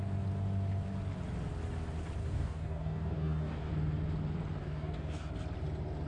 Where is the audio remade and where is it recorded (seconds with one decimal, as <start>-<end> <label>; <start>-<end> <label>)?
0.0-2.2 recorded; 2.2-3.7 remade; 3.7-4.6 recorded; 4.6-5.3 remade; 5.3-6.1 recorded